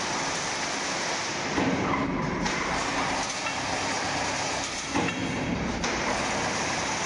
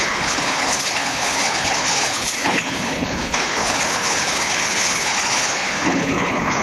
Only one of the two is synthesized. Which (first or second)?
second